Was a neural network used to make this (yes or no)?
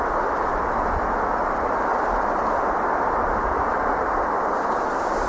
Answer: no